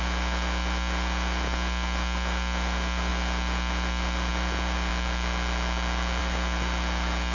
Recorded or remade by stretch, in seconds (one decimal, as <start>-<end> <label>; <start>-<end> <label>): 0.0-7.3 recorded